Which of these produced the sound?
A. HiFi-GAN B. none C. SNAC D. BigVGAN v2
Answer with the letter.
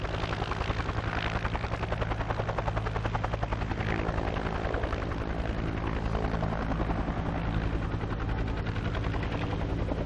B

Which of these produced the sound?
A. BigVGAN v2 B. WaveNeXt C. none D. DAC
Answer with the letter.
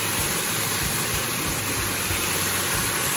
A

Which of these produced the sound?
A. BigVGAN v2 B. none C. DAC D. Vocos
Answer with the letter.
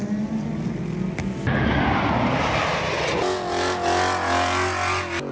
B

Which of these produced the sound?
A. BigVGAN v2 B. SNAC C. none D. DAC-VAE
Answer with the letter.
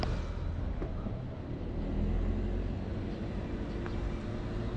C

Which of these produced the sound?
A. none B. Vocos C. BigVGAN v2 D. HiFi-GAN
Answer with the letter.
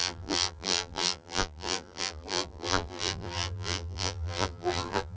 C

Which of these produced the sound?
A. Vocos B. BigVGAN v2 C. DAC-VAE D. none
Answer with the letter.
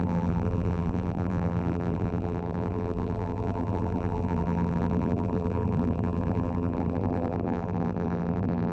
B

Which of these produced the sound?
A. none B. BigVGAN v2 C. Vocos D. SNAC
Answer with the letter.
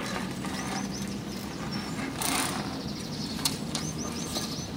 B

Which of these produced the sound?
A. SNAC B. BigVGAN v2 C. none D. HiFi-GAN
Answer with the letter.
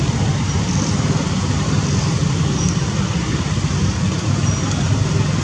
B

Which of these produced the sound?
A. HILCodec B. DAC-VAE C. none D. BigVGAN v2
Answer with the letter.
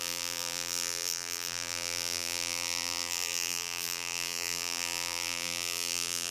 D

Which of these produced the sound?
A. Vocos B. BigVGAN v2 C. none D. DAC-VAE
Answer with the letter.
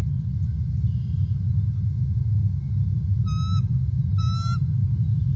C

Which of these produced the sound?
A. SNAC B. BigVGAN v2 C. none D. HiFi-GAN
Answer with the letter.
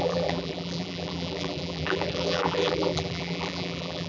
B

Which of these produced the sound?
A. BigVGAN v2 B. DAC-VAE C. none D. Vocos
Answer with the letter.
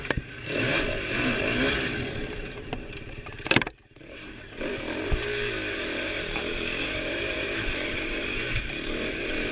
A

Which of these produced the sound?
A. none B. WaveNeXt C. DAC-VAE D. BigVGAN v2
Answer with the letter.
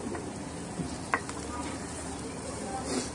D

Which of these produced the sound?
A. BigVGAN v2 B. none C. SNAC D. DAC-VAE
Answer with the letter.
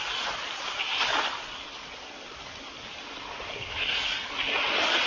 B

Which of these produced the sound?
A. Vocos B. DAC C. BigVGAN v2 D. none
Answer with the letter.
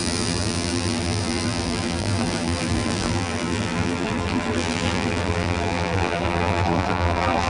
C